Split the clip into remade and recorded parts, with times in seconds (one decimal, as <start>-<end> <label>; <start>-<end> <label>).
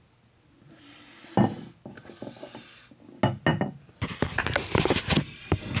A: 0.0-5.8 recorded